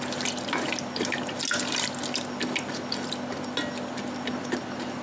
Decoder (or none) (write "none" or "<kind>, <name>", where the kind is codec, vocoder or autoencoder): none